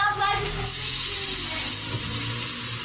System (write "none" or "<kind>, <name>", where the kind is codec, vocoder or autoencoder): none